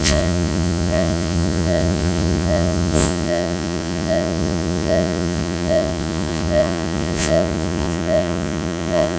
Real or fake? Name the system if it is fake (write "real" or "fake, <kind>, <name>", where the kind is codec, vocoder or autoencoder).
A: fake, vocoder, Vocos